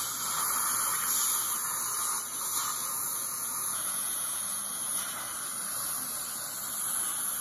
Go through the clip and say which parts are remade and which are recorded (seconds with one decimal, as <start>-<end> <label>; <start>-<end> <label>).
0.0-2.8 recorded; 2.8-4.6 remade; 4.6-7.4 recorded